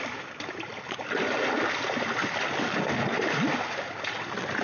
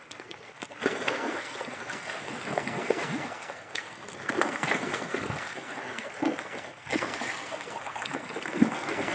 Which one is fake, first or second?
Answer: second